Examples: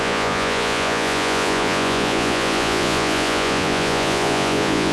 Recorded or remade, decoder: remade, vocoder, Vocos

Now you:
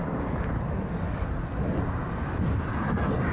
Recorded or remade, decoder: recorded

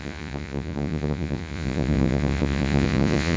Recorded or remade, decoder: remade, vocoder, Vocos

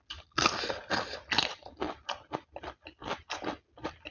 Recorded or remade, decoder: recorded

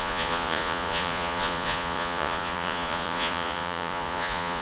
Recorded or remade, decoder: remade, vocoder, Vocos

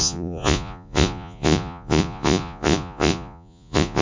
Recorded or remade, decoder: remade, vocoder, Vocos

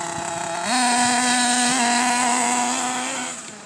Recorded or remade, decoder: recorded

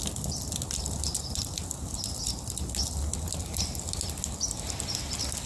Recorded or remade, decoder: recorded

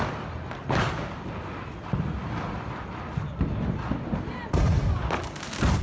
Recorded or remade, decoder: recorded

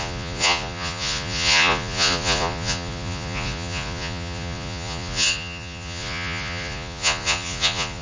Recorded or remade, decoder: remade, vocoder, Vocos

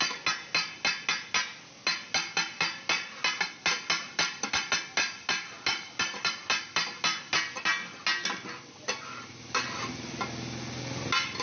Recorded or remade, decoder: recorded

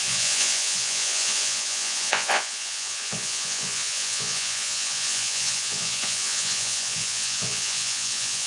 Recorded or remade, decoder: remade, vocoder, Vocos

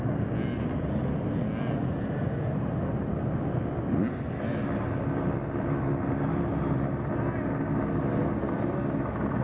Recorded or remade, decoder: recorded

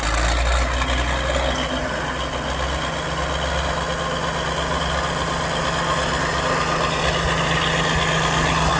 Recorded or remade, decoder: recorded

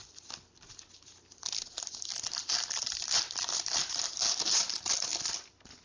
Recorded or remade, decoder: recorded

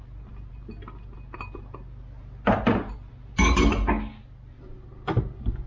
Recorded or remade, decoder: recorded